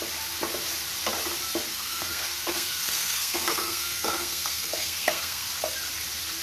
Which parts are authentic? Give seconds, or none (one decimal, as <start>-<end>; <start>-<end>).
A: 0.0-1.7; 5.5-6.4